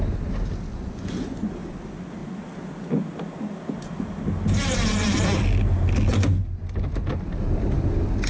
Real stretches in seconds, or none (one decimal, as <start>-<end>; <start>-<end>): 0.0-0.7; 1.5-8.3